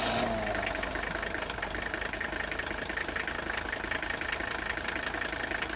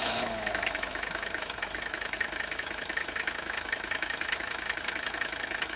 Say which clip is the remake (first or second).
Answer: second